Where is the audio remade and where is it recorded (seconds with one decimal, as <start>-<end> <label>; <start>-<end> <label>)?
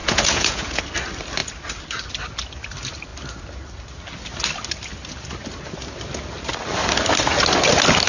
0.0-0.8 remade; 0.8-8.1 recorded